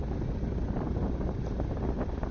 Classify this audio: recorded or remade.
recorded